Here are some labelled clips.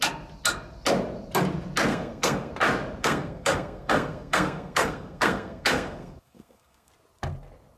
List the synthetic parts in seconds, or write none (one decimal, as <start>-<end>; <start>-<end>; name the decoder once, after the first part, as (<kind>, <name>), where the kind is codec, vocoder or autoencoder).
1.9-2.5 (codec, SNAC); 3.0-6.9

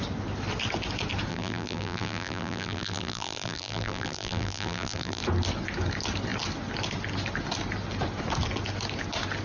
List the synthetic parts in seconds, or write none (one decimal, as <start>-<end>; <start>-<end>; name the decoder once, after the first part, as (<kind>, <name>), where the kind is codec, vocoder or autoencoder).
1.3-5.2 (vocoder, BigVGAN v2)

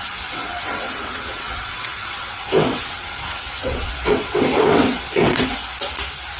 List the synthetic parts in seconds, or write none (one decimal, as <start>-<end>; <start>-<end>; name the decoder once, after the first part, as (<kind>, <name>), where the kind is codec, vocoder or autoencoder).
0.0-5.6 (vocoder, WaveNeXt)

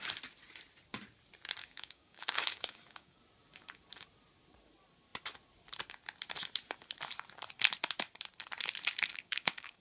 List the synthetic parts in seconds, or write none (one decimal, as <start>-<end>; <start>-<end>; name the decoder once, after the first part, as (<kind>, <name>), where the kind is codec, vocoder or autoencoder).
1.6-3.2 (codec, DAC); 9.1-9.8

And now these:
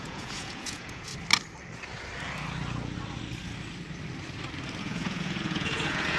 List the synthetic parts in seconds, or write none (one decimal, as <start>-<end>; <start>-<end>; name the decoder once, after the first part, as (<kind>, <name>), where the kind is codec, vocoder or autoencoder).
0.0-1.1 (vocoder, Vocos); 4.8-6.2